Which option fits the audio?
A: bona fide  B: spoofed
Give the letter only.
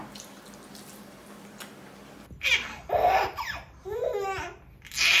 A